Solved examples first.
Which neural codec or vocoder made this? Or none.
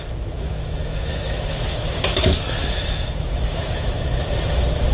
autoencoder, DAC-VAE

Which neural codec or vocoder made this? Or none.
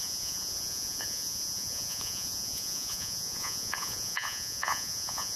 vocoder, Vocos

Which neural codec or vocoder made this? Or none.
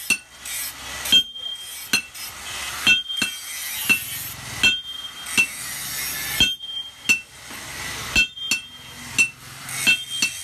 none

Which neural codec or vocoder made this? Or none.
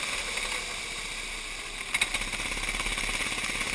none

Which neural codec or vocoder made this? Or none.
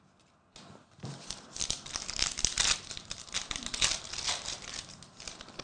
none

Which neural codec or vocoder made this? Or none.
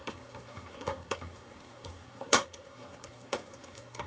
codec, SNAC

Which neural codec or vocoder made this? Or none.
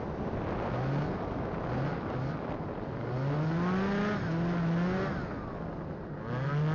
none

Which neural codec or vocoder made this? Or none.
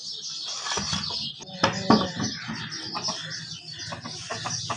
none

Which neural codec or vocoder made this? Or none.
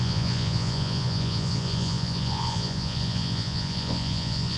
vocoder, Vocos